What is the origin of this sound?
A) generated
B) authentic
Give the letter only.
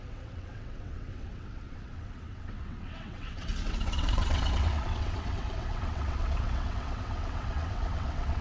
A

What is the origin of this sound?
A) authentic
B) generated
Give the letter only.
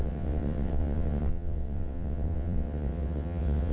B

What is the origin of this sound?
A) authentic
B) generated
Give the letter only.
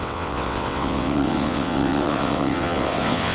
B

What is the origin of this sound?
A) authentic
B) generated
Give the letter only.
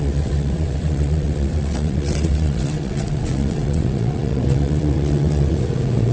B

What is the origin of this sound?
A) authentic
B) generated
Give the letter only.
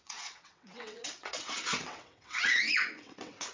B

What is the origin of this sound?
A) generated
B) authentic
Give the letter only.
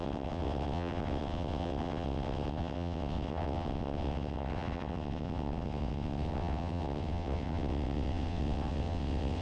A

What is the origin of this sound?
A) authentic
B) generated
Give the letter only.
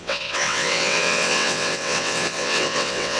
B